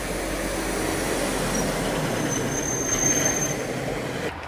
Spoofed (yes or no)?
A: no